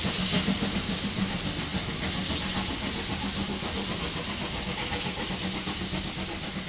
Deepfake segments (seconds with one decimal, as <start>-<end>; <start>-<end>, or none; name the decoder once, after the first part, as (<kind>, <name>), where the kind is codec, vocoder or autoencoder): none